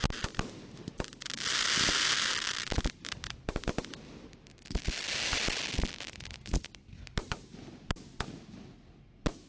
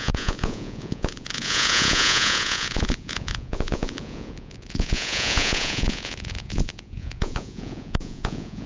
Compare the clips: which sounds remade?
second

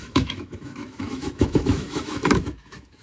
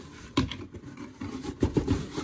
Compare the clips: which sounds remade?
first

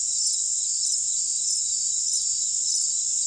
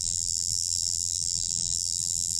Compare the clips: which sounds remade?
second